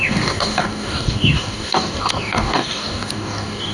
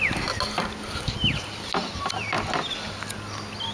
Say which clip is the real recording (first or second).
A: second